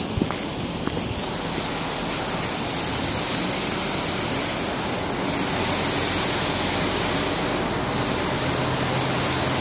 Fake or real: real